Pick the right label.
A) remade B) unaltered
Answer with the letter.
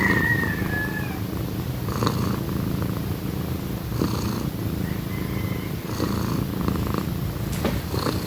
B